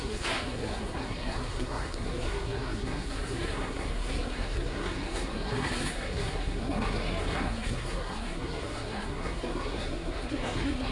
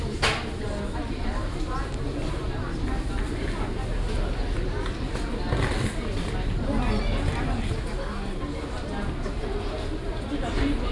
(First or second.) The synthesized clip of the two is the first